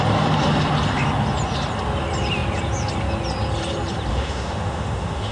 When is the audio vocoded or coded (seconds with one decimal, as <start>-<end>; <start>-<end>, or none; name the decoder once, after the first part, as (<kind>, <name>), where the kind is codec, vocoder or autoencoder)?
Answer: 4.1-5.3 (autoencoder, DAC-VAE)